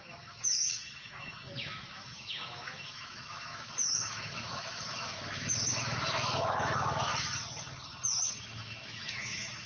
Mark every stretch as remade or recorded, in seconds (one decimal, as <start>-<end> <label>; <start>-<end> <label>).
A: 0.0-7.1 remade; 7.1-8.3 recorded; 8.3-9.7 remade